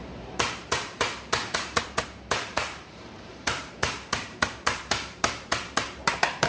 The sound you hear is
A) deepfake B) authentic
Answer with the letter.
A